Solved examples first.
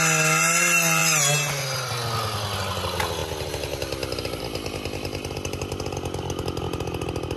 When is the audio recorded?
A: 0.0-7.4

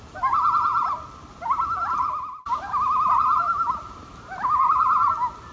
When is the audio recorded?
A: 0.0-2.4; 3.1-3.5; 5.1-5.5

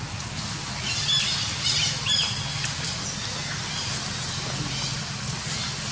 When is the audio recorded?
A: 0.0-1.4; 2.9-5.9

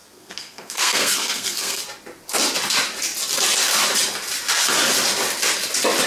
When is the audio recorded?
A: 1.8-6.1

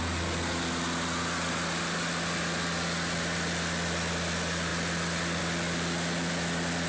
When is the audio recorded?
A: 0.0-6.9

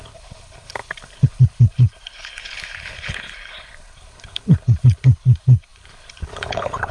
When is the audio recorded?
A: none

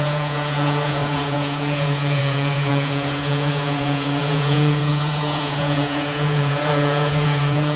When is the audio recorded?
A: none

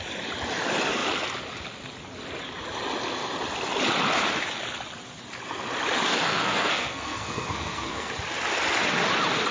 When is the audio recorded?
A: 0.0-6.3; 8.1-9.5